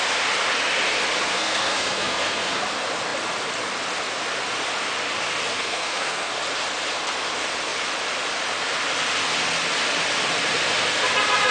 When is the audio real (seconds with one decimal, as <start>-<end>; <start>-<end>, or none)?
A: 0.0-1.3; 2.6-5.5; 6.3-11.5